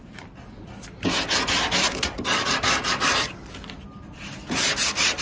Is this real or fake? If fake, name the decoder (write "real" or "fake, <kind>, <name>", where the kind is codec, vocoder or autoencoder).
fake, vocoder, BigVGAN v2